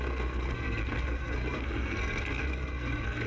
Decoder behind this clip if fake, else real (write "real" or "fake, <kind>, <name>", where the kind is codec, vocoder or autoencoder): fake, codec, SNAC